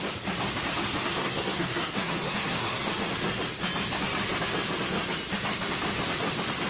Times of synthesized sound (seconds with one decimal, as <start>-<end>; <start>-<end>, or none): 1.2-2.9